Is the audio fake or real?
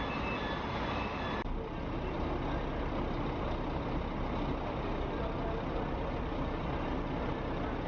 real